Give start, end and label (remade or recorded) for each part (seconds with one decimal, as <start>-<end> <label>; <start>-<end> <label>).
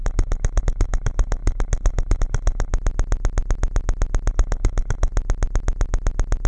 0.0-2.7 remade; 2.7-4.3 recorded; 4.3-5.1 remade; 5.1-6.5 recorded